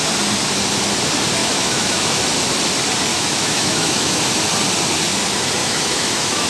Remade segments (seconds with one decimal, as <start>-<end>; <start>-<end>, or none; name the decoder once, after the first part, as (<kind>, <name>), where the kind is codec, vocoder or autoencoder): 1.4-2.2 (autoencoder, DAC-VAE); 3.1-4.2; 5.6-6.5